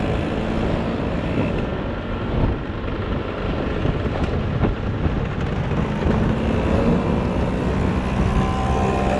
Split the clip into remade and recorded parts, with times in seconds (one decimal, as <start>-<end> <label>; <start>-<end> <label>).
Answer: 0.0-9.2 recorded